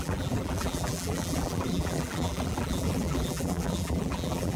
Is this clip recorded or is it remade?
remade